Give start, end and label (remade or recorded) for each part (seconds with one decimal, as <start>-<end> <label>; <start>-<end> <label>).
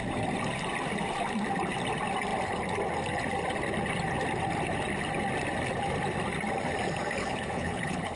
0.0-7.2 recorded; 7.2-8.2 remade